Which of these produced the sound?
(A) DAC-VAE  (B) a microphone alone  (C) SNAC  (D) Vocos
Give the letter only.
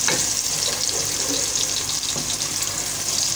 B